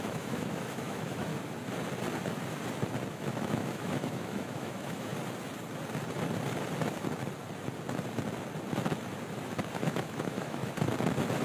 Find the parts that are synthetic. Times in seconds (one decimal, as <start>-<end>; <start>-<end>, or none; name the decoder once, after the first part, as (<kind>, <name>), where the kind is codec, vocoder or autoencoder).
0.0-1.3 (autoencoder, DAC-VAE); 3.1-5.1; 9.8-10.6